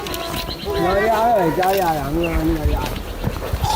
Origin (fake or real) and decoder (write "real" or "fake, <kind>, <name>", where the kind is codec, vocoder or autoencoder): real